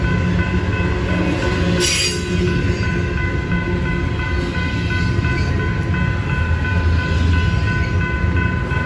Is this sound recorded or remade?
recorded